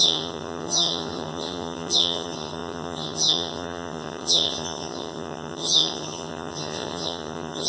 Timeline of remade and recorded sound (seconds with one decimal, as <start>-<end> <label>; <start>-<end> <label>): 0.0-7.7 remade